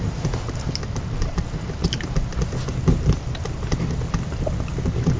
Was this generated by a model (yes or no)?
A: no